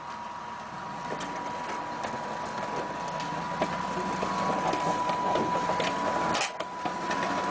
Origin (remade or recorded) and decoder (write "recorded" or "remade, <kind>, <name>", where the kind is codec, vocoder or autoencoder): recorded